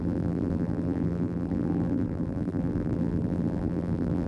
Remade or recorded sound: remade